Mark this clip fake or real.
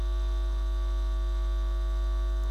real